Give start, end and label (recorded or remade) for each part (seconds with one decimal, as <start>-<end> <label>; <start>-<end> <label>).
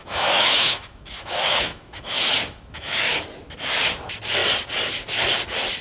0.0-3.2 remade; 3.2-5.8 recorded